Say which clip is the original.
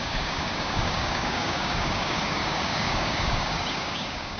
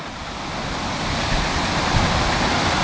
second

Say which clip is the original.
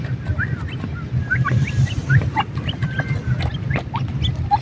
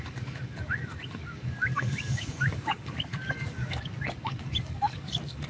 first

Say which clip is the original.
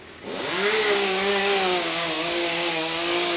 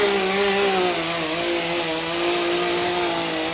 second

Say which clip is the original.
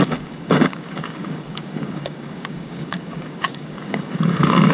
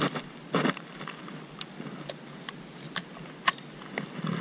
second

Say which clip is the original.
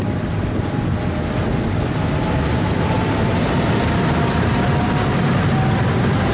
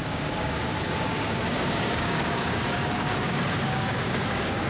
first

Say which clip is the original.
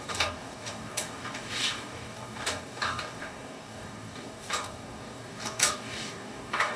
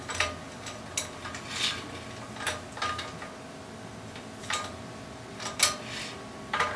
second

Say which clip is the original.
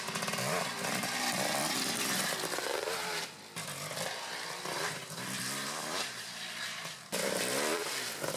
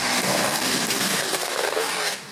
first